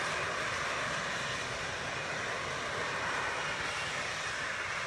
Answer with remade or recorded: recorded